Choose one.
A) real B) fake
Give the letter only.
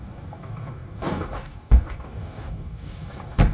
B